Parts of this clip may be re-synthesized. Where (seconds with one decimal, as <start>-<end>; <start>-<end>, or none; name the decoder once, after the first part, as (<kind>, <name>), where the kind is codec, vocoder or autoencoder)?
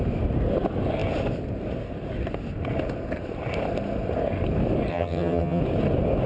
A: 4.9-5.6 (vocoder, HiFi-GAN)